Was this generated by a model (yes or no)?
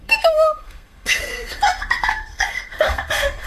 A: yes